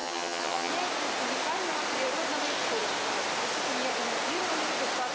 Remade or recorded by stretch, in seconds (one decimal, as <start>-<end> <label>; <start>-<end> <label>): 0.0-0.7 remade; 0.7-5.1 recorded